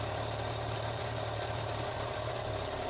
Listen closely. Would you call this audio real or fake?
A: fake